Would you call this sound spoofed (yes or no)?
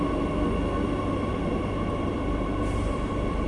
no